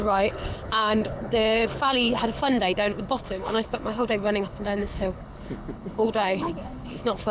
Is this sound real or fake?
fake